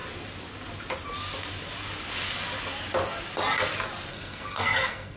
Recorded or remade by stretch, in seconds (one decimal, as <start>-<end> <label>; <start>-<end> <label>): 0.0-4.1 recorded; 4.1-5.2 remade